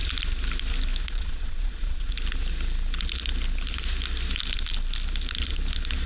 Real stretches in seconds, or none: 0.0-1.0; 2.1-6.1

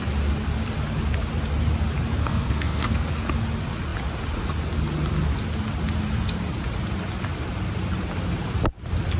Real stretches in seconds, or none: 0.0-2.2; 3.1-9.2

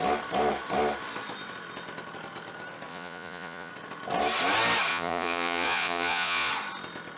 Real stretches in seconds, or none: 0.0-2.9; 3.7-4.9; 6.5-7.2